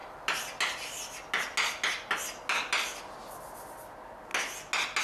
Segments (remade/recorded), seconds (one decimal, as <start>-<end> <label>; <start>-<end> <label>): 0.0-5.0 recorded